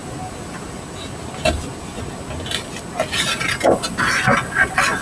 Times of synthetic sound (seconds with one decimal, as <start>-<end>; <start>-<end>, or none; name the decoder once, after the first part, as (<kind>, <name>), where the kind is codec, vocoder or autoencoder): none